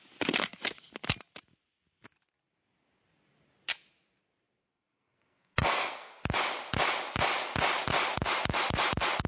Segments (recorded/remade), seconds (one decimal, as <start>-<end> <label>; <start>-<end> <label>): 0.0-4.6 recorded; 4.6-6.2 remade; 6.2-9.3 recorded